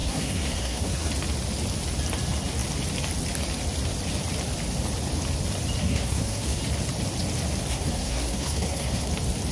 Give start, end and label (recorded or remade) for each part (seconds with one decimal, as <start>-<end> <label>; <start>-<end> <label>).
0.0-1.1 remade; 1.1-5.8 recorded; 5.8-6.6 remade; 6.6-7.7 recorded; 7.7-9.1 remade; 9.1-9.5 recorded